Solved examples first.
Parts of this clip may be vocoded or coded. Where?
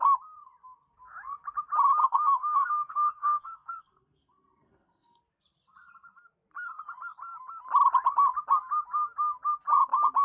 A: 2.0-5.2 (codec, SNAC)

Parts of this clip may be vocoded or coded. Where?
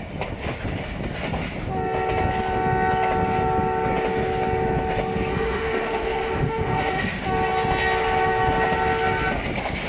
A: 5.3-7.2 (autoencoder, DAC-VAE)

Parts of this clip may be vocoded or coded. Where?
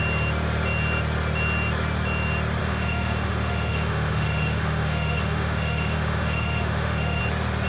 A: 2.6-7.2 (autoencoder, DAC-VAE)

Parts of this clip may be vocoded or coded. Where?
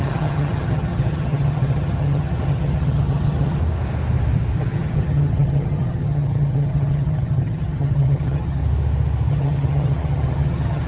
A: 0.0-3.6 (vocoder, HiFi-GAN); 4.6-8.6; 9.3-10.9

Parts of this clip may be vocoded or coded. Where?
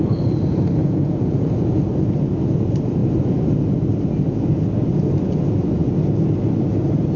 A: 0.8-1.5 (vocoder, Vocos)